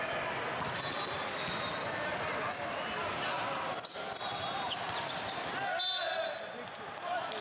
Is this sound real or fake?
fake